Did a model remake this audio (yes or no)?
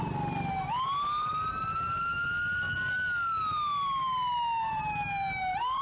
no